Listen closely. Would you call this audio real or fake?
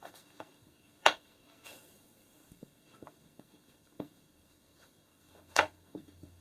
fake